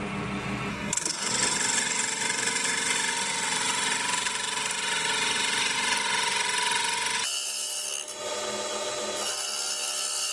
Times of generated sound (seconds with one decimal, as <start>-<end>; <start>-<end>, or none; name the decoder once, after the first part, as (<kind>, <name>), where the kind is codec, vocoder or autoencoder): 0.7-1.3 (codec, SNAC)